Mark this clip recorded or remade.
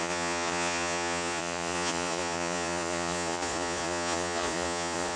remade